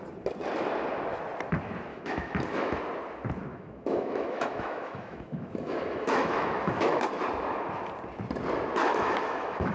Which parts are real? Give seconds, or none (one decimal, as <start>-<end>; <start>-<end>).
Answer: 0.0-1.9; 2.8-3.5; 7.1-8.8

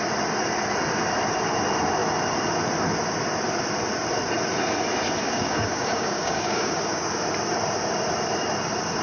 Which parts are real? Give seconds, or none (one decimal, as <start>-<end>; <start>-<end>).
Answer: 0.0-5.2; 7.1-9.0

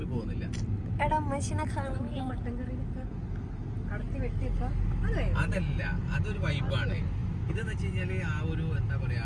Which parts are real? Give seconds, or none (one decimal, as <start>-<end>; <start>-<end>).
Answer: 0.0-9.2

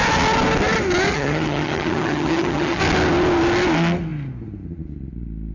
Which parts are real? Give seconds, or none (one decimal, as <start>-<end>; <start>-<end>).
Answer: 0.0-1.1; 2.8-5.5

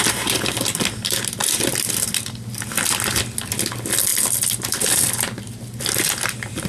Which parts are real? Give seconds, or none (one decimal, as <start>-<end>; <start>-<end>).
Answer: 0.0-6.7